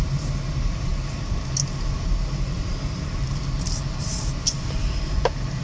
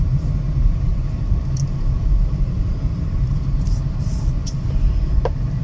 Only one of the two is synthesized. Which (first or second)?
second